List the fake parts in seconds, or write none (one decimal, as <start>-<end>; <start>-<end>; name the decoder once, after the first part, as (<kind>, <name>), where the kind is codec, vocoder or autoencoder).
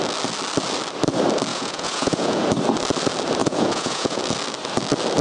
1.5-2.4 (vocoder, Vocos); 3.4-4.2